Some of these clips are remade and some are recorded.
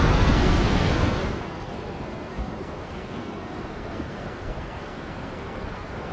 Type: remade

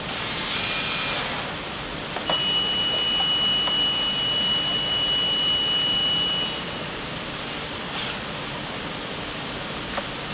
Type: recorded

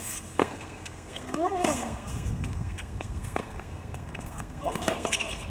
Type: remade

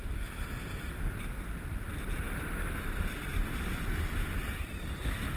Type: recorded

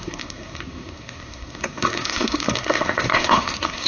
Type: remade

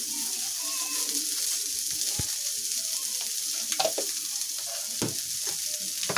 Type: recorded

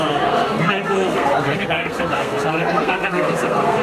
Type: remade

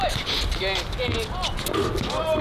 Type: recorded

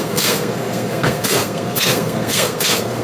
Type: remade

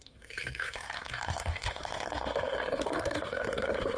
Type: remade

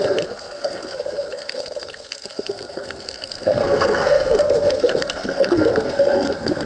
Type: remade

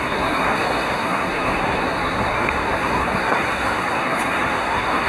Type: remade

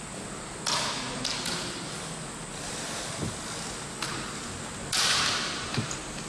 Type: recorded